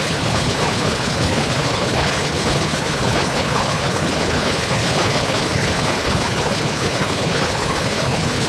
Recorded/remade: remade